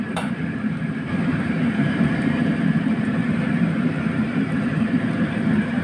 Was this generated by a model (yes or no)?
yes